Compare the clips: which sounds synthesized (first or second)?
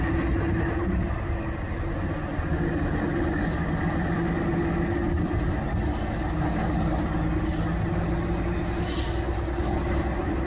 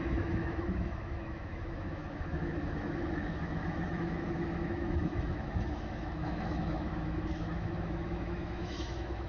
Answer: second